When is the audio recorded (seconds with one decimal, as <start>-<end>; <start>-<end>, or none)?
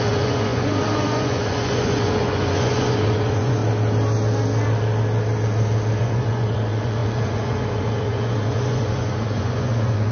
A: 3.6-6.0